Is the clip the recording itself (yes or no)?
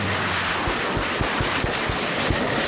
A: yes